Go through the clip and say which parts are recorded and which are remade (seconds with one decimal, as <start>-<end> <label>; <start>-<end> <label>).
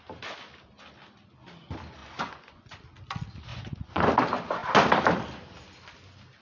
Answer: 0.0-2.0 recorded; 2.0-2.8 remade; 2.8-3.5 recorded; 3.5-4.1 remade; 4.1-6.4 recorded